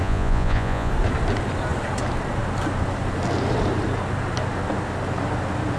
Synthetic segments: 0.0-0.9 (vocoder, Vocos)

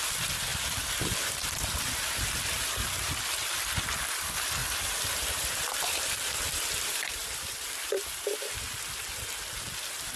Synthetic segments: 0.5-1.6 (vocoder, BigVGAN v2); 4.6-8.5

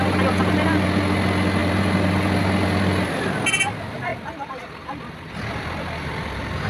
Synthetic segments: none

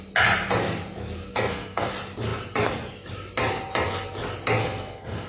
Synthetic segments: 1.3-1.9 (codec, SNAC); 4.6-5.3

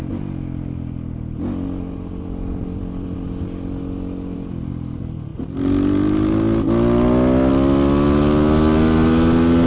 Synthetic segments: none